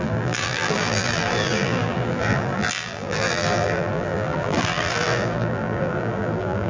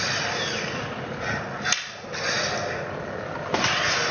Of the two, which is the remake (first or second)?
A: first